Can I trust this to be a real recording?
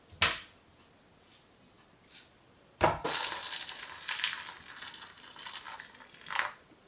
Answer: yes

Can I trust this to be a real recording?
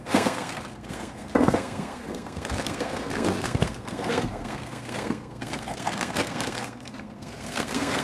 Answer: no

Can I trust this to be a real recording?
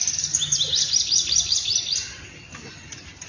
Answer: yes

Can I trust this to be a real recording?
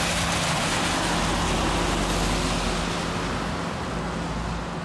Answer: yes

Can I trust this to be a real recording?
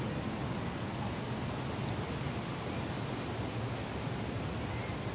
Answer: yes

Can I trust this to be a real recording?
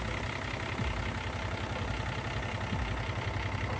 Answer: yes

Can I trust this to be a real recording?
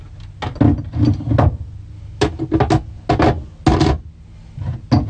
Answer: yes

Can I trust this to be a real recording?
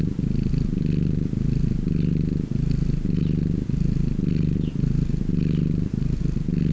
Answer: yes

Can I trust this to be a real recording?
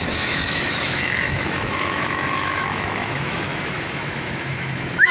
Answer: no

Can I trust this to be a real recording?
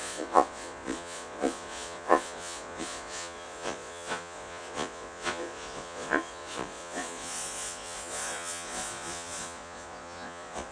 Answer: no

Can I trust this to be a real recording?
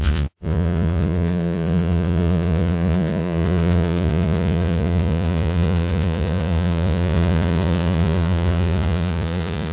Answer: no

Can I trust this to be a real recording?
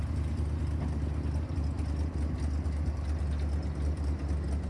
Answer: yes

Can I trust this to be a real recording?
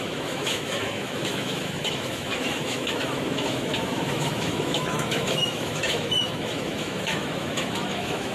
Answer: no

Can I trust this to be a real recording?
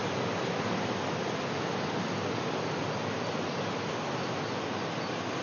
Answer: yes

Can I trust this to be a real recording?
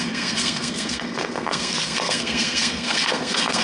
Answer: no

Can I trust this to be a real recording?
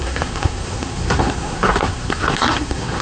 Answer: no